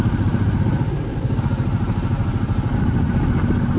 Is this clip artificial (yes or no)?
no